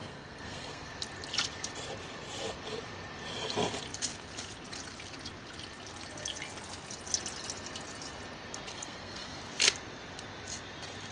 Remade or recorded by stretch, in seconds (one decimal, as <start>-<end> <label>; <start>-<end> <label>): 0.0-0.9 remade; 0.9-8.7 recorded; 8.7-9.4 remade; 9.4-11.1 recorded